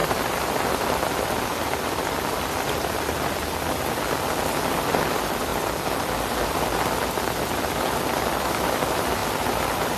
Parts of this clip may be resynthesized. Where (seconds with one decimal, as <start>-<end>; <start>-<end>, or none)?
none